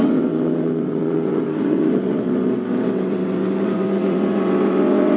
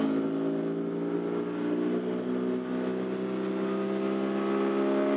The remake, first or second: first